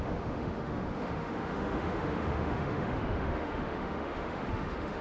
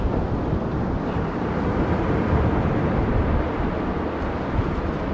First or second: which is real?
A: second